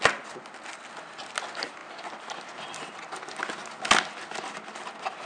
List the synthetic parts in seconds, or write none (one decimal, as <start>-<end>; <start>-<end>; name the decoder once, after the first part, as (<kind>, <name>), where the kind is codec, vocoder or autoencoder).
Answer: none